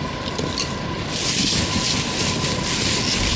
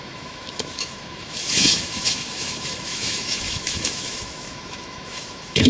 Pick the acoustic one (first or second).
first